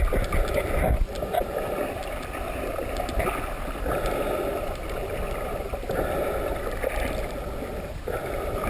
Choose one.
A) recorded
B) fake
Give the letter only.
A